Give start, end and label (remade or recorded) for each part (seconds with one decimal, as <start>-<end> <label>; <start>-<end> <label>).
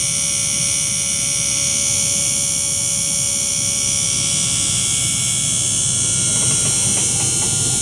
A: 0.0-7.8 recorded